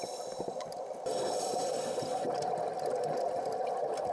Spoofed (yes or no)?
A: no